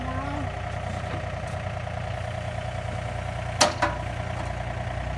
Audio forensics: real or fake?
real